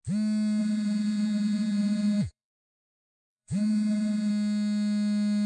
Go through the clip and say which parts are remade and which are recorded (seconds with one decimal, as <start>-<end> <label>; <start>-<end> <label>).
0.0-0.6 recorded; 0.6-2.5 remade; 2.5-2.9 recorded; 2.9-4.3 remade; 4.3-5.5 recorded